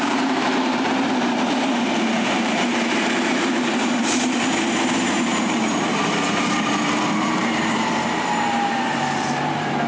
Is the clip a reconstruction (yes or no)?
yes